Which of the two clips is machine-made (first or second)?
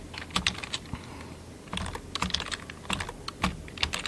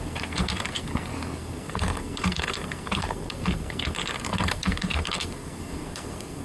second